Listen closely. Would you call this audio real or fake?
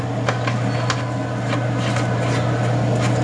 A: real